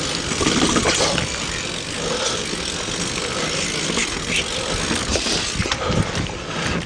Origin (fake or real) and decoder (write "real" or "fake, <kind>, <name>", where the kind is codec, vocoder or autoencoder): real